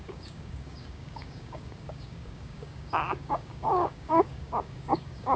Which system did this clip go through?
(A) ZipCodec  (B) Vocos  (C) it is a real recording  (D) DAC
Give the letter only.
D